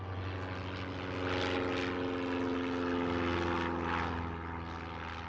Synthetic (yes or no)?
no